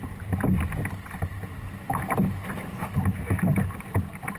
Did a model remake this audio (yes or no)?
no